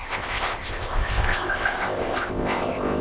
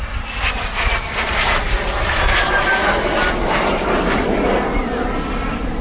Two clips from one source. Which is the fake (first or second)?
first